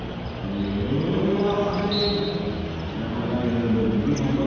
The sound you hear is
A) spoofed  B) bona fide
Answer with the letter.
B